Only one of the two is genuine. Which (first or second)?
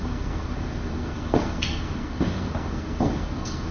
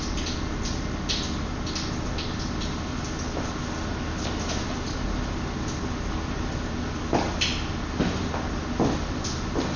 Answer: second